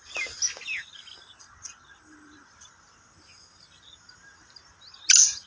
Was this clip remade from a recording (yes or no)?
no